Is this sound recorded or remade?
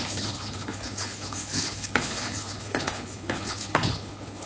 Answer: remade